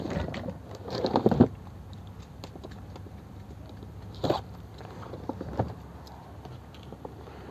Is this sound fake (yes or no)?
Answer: yes